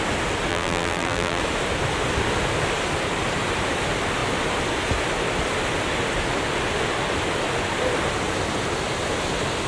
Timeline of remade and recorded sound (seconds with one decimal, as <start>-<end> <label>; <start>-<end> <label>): 0.0-0.5 recorded; 0.5-1.4 remade; 1.4-9.7 recorded